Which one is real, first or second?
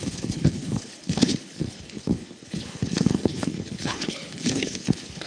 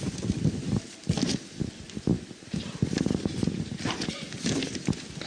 second